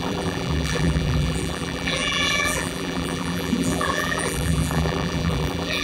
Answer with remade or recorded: remade